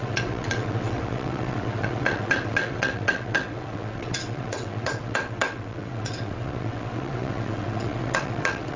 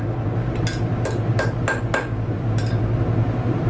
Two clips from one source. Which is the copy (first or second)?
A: first